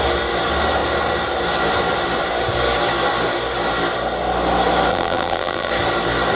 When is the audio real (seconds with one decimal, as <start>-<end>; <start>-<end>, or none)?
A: 0.0-4.9; 5.7-6.4